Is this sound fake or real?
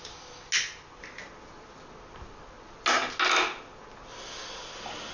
real